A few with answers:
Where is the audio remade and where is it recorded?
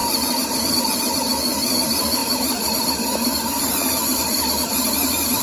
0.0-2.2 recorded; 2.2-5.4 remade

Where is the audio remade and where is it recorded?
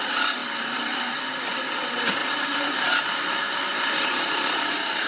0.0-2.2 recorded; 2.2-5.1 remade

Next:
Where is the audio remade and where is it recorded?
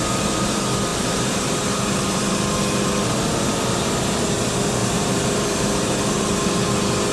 0.0-0.9 recorded; 0.9-2.2 remade; 2.2-4.8 recorded; 4.8-6.3 remade; 6.3-7.1 recorded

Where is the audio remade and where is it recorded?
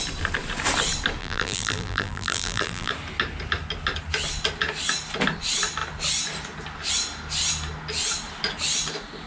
0.0-1.2 recorded; 1.2-2.9 remade; 2.9-9.3 recorded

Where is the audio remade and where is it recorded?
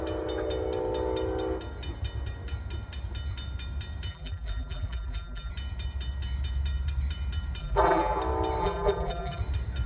0.0-4.1 recorded; 4.1-5.5 remade; 5.5-7.6 recorded; 7.6-8.2 remade; 8.2-8.6 recorded; 8.6-9.4 remade; 9.4-9.9 recorded